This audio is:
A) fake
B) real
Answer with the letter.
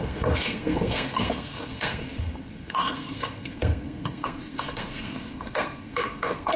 A